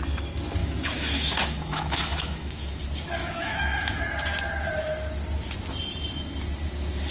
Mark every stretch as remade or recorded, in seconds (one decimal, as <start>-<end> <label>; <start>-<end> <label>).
0.0-0.6 recorded; 0.6-2.8 remade; 2.8-3.2 recorded; 3.2-4.0 remade; 4.0-7.1 recorded